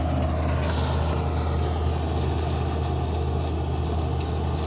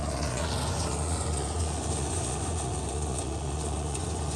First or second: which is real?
first